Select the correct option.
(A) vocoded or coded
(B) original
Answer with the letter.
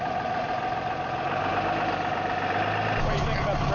B